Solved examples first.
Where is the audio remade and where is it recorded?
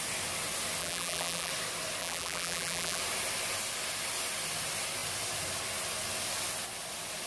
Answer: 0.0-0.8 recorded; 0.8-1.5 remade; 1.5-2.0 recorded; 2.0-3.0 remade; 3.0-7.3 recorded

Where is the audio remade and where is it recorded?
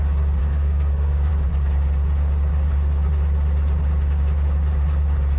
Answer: 0.0-0.4 recorded; 0.4-1.3 remade; 1.3-5.4 recorded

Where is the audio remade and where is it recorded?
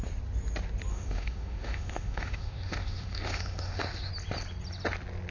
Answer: 0.0-0.9 recorded; 0.9-4.1 remade; 4.1-5.3 recorded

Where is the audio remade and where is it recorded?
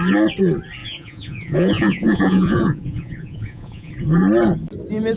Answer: 0.0-0.8 recorded; 0.8-3.9 remade; 3.9-5.2 recorded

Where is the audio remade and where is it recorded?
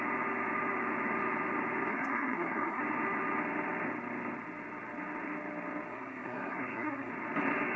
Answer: 0.0-1.9 recorded; 1.9-2.8 remade; 2.8-5.9 recorded; 5.9-7.1 remade; 7.1-7.8 recorded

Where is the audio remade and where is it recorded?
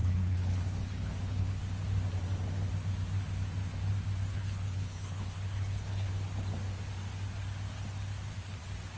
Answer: 0.0-1.6 remade; 1.6-4.3 recorded; 4.3-6.1 remade; 6.1-9.0 recorded